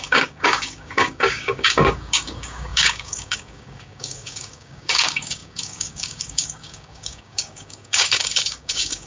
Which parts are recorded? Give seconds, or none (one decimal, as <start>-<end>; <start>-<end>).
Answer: none